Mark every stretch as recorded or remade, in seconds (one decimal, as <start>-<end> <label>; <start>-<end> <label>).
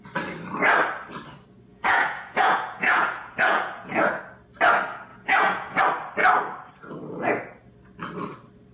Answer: 0.0-1.7 recorded; 1.7-4.2 remade; 4.2-5.1 recorded; 5.1-5.8 remade; 5.8-8.7 recorded